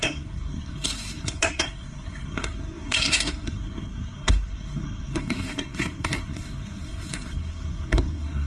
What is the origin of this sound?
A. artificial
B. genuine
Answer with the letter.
A